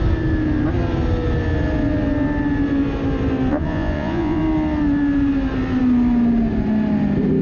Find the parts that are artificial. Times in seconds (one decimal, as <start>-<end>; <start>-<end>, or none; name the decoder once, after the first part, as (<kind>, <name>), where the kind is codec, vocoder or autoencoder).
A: 3.5-4.4 (vocoder, Vocos)